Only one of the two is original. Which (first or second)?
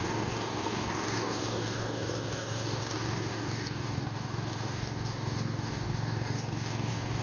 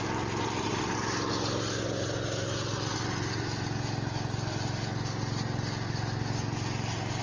second